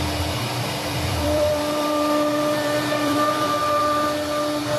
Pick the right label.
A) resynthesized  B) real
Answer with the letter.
A